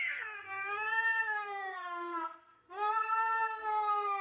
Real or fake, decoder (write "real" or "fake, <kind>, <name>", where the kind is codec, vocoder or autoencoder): fake, codec, SNAC